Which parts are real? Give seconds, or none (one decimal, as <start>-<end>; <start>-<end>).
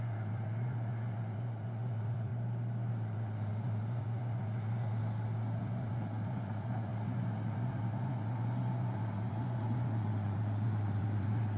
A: 2.3-2.9; 5.0-5.6